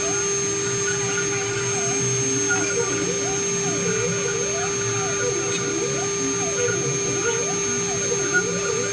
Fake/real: real